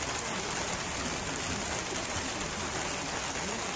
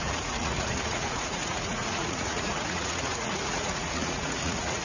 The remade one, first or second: second